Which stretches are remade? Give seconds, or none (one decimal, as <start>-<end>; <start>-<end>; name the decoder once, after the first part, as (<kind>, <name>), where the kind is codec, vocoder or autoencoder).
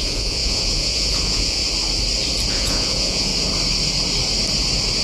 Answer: 0.0-1.6 (vocoder, Vocos); 2.5-3.3